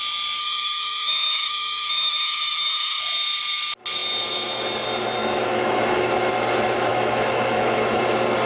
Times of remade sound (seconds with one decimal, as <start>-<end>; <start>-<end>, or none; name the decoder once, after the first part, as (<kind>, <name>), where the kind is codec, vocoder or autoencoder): 0.4-3.0 (autoencoder, DAC-VAE); 5.2-6.1; 6.9-8.0

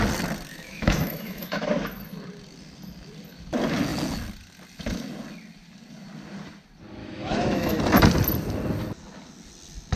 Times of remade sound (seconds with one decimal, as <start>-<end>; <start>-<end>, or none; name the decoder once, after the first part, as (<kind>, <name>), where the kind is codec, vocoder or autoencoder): 0.5-1.7 (autoencoder, DAC-VAE); 7.0-7.8